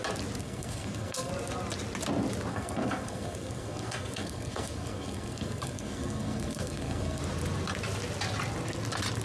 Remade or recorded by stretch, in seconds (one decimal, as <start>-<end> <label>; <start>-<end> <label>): 0.0-0.4 recorded; 0.4-1.3 remade; 1.3-2.5 recorded; 2.5-7.2 remade; 7.2-9.2 recorded